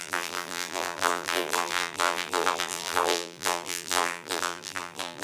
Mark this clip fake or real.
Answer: fake